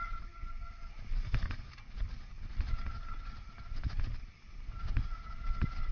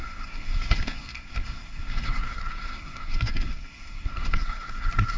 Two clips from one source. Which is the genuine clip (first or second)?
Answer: first